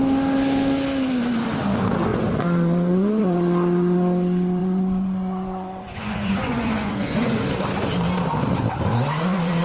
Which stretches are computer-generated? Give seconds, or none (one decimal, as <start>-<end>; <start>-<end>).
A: 2.1-3.2; 4.6-7.4